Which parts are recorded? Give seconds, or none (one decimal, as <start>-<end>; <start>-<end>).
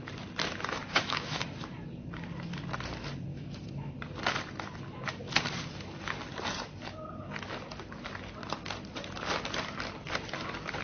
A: 0.0-0.9; 1.4-3.3; 3.9-10.8